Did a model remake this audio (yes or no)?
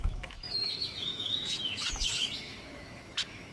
yes